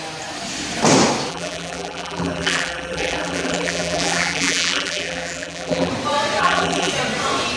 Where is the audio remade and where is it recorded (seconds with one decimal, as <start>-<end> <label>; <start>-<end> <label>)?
0.0-1.3 recorded; 1.3-5.9 remade; 5.9-6.4 recorded; 6.4-6.9 remade; 6.9-7.6 recorded